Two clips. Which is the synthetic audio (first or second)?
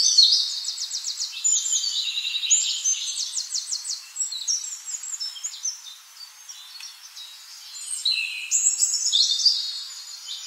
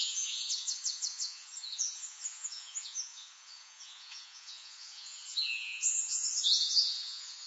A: second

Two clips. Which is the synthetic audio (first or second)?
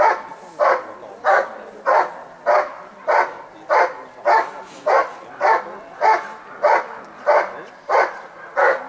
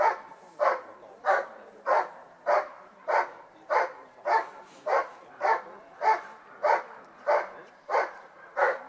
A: second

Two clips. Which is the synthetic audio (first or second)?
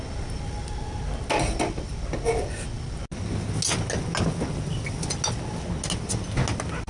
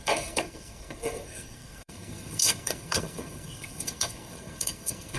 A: second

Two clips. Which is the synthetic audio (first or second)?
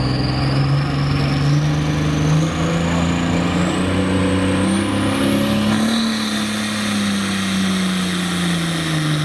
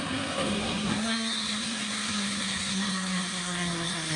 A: second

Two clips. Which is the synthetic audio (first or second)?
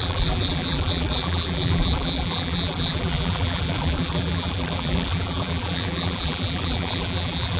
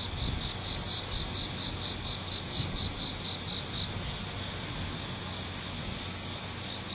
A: first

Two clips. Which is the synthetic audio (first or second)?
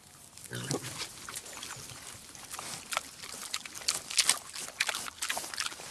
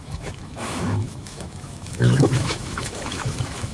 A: second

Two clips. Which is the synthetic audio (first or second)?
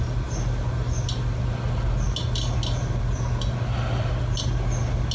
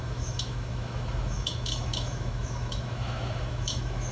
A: second